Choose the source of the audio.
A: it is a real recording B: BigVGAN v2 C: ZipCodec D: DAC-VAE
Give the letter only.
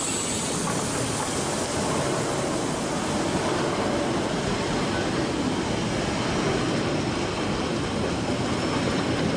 A